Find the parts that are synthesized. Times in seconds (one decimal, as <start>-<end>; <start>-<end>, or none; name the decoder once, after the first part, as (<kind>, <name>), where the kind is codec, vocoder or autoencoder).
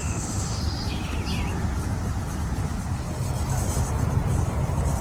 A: 0.0-0.6 (autoencoder, DAC-VAE)